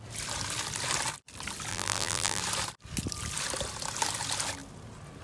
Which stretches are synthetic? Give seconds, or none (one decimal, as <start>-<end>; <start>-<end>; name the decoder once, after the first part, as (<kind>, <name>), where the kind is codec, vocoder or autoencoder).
1.7-2.4 (vocoder, BigVGAN v2)